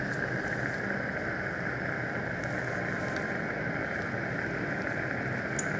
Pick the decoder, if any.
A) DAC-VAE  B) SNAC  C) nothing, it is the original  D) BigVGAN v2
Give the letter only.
C